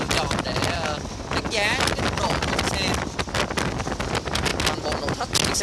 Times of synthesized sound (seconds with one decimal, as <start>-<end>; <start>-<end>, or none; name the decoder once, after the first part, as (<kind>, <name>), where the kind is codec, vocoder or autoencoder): none